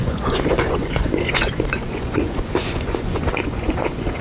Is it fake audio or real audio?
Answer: fake